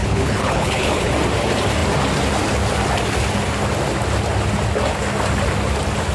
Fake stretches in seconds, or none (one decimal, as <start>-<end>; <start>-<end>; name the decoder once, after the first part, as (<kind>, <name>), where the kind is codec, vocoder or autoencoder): 0.0-1.1 (codec, HILCodec)